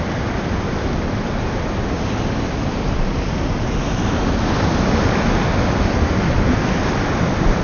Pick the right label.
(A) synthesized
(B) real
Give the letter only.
B